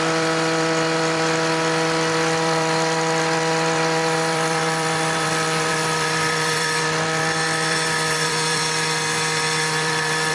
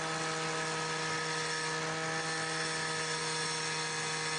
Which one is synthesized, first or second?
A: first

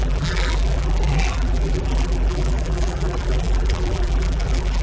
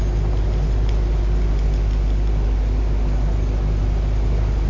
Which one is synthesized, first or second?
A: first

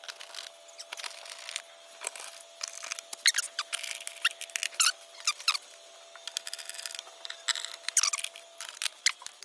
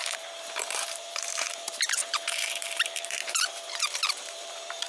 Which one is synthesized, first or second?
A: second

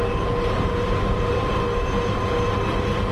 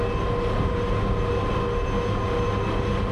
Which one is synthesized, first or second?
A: first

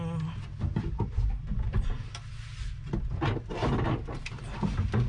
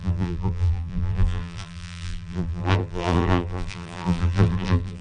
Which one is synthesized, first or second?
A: second